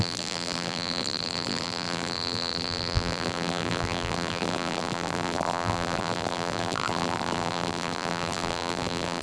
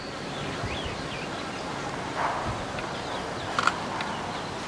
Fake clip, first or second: first